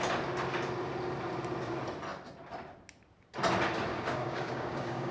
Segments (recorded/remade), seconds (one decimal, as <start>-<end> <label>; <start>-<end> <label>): 0.0-3.9 recorded; 3.9-5.1 remade